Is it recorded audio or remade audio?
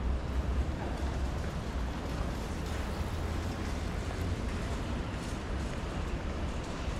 remade